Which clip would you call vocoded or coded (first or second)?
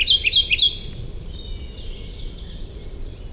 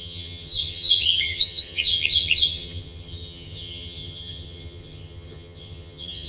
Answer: second